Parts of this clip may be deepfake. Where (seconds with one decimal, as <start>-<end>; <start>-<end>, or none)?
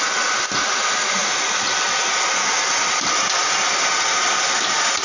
none